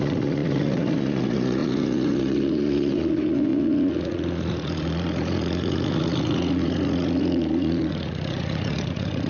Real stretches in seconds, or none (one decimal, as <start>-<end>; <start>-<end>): none